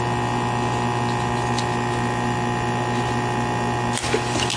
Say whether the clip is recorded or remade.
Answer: recorded